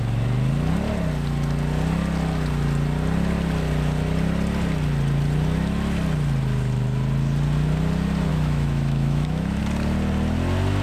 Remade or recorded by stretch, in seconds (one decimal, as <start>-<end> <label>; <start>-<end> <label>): 0.0-8.3 recorded; 8.3-9.6 remade; 9.6-10.8 recorded